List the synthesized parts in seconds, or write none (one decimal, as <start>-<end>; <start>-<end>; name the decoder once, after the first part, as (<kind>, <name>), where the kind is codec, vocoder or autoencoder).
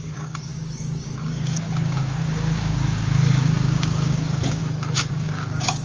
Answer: 0.0-4.6 (codec, DAC); 5.1-5.8